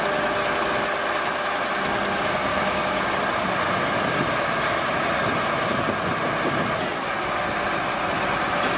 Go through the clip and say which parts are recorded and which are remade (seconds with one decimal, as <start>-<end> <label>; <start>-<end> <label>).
0.0-2.5 recorded; 2.5-3.1 remade; 3.1-8.8 recorded